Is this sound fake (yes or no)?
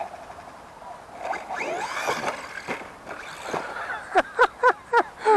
no